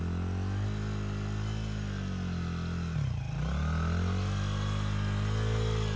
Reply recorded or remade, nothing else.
recorded